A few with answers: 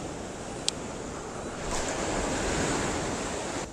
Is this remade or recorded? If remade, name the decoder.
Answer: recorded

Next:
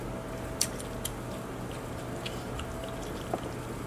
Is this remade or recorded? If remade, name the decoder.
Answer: recorded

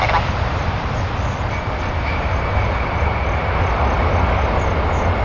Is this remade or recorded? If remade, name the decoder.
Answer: recorded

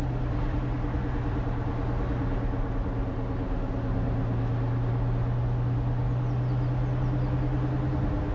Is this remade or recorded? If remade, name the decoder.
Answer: recorded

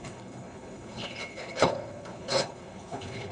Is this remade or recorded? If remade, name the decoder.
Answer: remade, codec, HILCodec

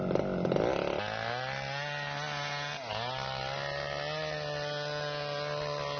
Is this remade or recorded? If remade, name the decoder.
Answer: recorded